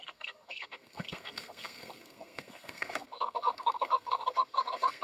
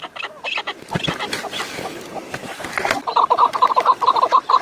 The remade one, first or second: first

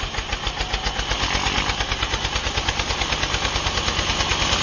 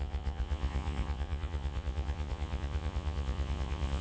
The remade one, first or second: second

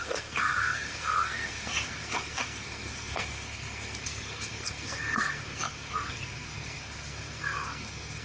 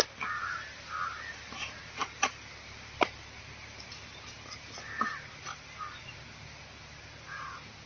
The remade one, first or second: first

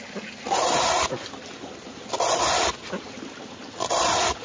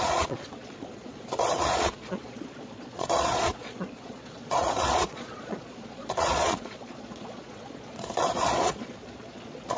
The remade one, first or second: second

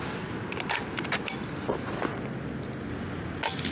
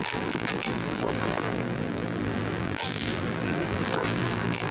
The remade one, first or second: second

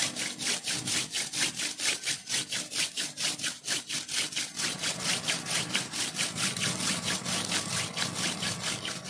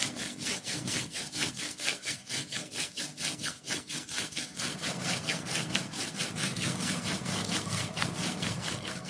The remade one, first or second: second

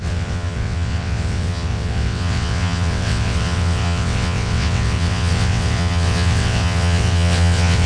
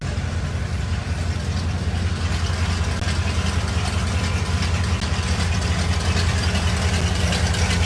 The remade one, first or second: first